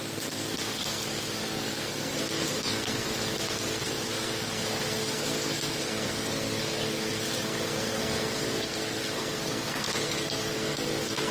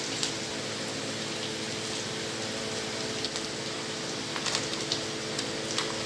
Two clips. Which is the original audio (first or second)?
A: second